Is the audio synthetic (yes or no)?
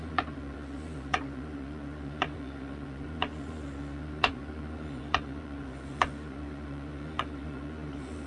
yes